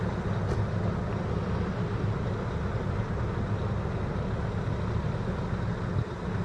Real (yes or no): yes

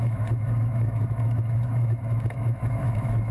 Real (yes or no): no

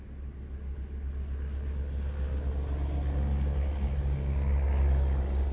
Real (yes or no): yes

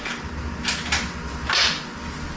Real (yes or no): yes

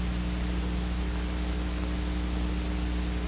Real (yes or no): yes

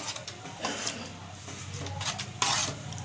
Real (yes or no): yes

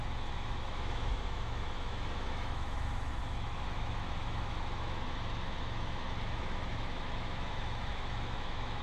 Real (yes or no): no